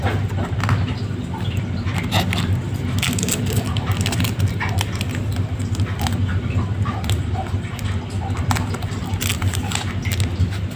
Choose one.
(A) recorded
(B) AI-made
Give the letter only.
A